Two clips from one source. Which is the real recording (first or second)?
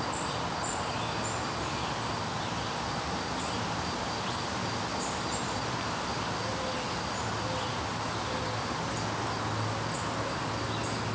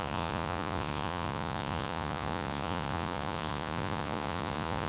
first